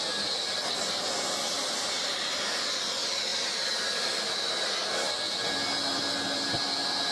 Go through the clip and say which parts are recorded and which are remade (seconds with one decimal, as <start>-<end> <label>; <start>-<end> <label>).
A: 0.0-7.1 recorded